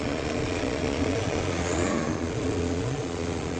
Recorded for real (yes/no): no